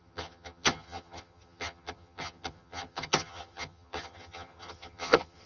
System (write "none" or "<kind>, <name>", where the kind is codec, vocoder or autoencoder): vocoder, HiFi-GAN